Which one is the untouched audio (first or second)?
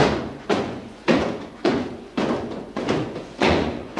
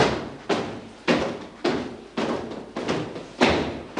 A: second